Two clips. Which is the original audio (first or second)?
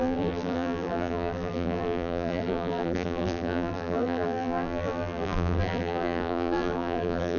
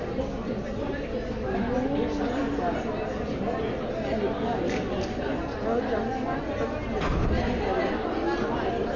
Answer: second